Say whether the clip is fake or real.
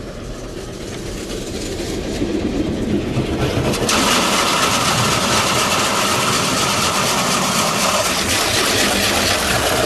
real